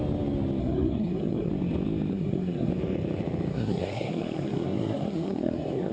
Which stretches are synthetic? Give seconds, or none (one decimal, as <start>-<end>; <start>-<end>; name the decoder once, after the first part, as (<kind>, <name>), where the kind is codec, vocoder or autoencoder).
0.6-1.5 (codec, SNAC); 2.1-2.7; 3.5-5.9